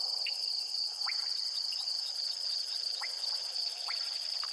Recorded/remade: remade